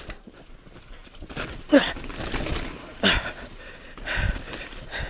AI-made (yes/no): no